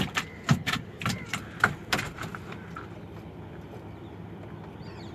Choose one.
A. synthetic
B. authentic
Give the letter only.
B